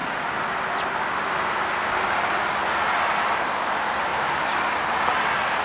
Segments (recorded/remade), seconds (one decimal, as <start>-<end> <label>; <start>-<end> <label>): 0.0-5.6 recorded